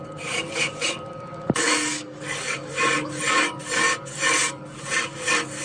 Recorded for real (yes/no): no